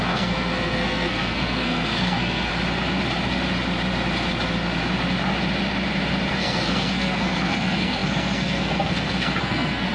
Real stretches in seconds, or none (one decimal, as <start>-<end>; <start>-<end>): 2.5-6.3